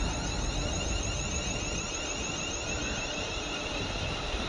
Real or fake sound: real